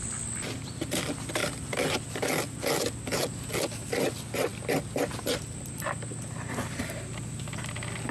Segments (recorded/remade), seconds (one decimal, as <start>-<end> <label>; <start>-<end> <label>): 0.0-8.1 recorded